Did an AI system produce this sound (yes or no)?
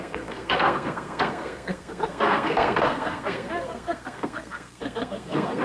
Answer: yes